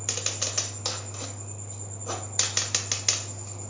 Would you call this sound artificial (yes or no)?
no